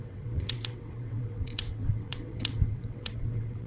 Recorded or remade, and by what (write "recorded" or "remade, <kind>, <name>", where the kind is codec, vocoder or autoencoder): remade, vocoder, WaveNeXt